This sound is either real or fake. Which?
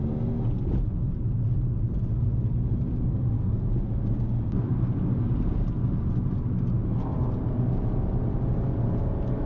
real